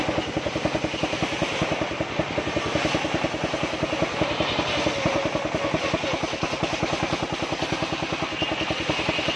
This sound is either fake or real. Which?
real